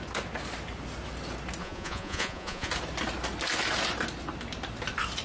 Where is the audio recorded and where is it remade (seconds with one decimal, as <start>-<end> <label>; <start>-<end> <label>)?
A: 0.0-1.6 recorded; 1.6-2.7 remade; 2.7-5.2 recorded